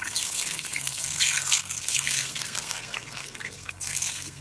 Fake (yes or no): yes